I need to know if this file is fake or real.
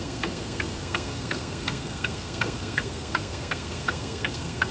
fake